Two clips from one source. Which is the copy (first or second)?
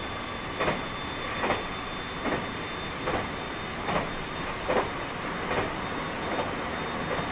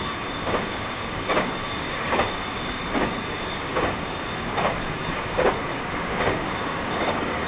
second